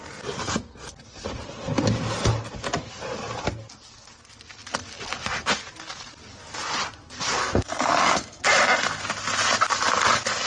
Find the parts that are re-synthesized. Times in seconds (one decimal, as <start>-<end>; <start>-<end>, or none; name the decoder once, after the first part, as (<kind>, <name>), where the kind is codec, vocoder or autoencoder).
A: 7.4-8.4 (codec, SNAC)